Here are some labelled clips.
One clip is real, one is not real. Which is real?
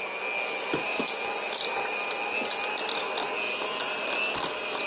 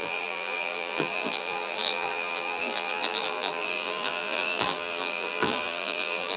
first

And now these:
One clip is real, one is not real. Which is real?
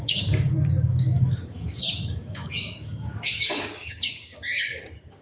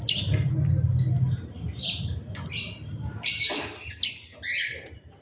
second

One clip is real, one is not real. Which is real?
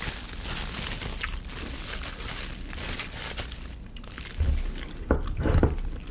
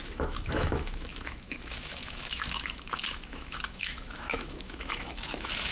first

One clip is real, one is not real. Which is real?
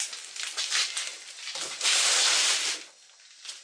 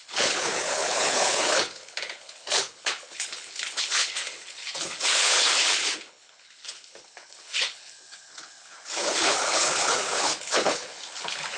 first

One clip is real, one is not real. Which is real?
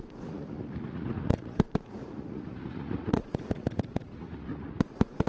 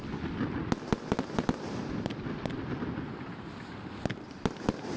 second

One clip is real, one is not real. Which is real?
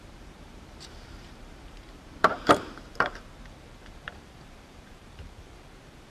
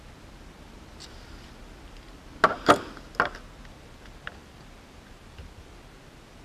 second